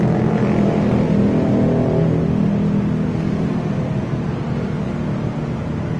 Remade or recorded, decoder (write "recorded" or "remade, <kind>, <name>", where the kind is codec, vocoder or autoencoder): recorded